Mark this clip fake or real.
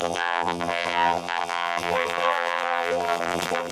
fake